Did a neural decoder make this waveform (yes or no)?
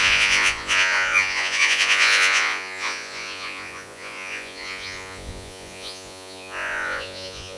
yes